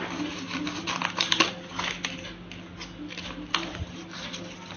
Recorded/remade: recorded